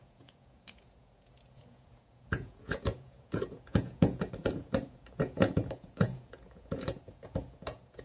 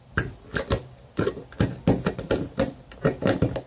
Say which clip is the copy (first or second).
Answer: first